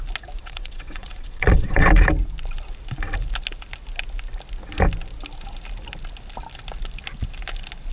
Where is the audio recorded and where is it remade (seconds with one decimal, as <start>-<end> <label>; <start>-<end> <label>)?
0.0-0.4 recorded; 0.4-1.9 remade; 1.9-7.9 recorded